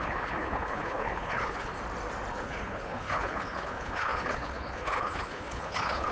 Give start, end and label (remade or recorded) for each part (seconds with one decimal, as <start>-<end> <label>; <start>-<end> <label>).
0.0-1.7 remade; 1.7-2.3 recorded; 2.3-6.1 remade